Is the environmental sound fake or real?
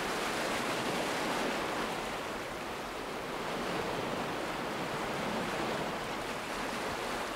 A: real